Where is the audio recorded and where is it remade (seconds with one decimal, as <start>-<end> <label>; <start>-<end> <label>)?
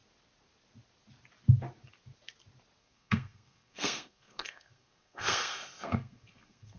0.0-2.8 recorded; 2.8-6.8 remade